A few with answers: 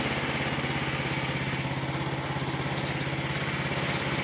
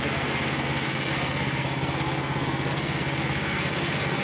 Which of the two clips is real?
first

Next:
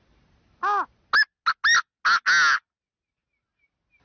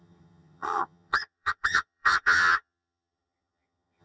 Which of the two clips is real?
first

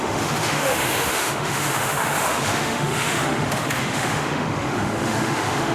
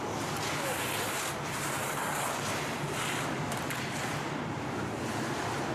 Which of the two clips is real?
second